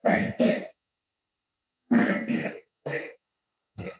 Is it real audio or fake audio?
fake